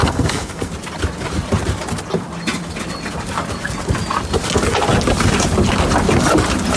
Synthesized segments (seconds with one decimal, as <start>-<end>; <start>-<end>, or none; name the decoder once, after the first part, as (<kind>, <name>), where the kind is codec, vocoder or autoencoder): 0.0-0.7 (codec, SNAC)